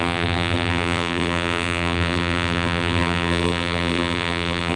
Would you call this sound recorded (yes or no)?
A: no